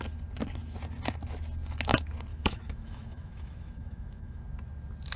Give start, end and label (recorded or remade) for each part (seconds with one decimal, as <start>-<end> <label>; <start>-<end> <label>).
0.0-2.3 recorded; 2.3-4.4 remade; 4.4-5.2 recorded